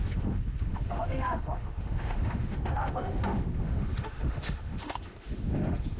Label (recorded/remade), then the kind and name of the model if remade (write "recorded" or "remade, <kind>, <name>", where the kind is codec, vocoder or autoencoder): remade, autoencoder, DAC-VAE